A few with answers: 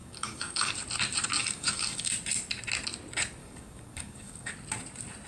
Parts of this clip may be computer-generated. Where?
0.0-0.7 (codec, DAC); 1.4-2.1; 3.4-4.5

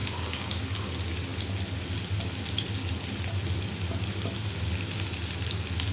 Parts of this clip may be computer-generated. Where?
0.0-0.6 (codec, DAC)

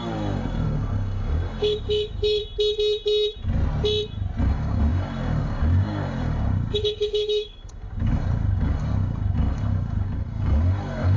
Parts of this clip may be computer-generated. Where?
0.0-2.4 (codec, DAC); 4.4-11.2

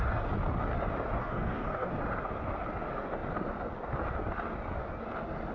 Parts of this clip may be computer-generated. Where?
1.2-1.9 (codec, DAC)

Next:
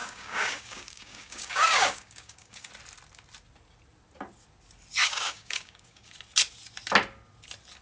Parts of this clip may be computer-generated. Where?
0.0-2.7 (codec, DAC); 5.0-6.1